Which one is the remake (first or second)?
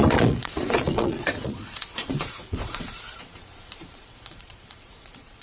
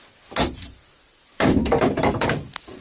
first